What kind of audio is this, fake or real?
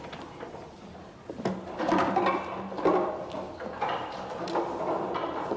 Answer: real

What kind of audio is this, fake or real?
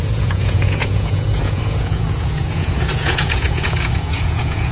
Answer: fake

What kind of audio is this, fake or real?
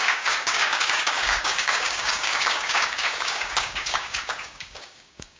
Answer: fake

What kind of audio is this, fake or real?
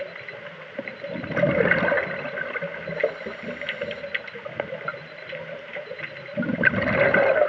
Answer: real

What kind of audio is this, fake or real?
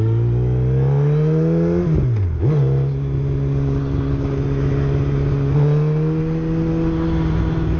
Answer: real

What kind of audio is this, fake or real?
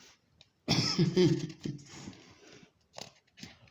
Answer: real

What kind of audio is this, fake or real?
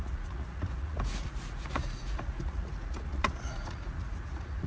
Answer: fake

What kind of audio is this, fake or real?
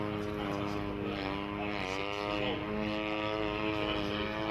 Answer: real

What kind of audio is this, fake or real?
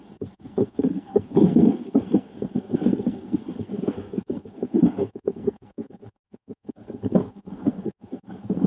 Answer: fake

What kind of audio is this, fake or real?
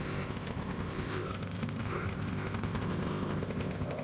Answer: fake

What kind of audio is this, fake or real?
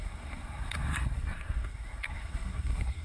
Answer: fake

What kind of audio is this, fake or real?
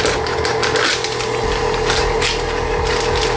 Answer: real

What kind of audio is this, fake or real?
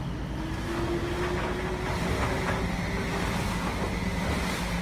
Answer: real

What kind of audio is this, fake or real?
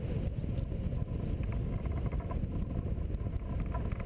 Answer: real